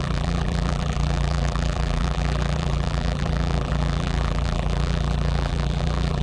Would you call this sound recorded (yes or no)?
no